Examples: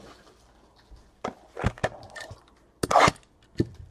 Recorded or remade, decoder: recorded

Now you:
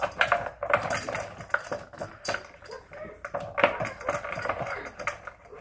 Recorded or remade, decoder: remade, vocoder, BigVGAN v2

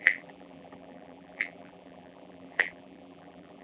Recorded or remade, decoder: remade, vocoder, BigVGAN v2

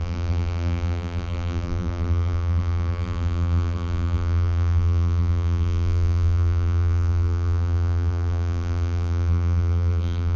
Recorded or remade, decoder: remade, vocoder, BigVGAN v2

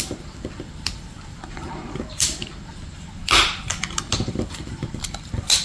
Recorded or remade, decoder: remade, vocoder, BigVGAN v2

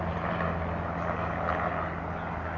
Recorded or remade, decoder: recorded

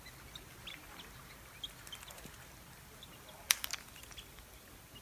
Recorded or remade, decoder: recorded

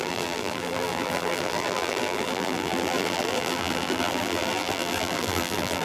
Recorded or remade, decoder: remade, vocoder, BigVGAN v2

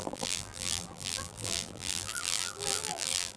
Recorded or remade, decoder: remade, vocoder, BigVGAN v2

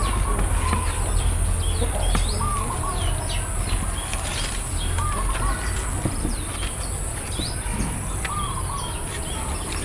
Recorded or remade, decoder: recorded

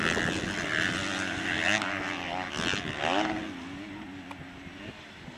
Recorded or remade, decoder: recorded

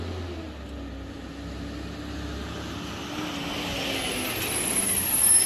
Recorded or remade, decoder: recorded